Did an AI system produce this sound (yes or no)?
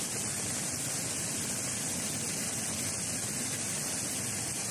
no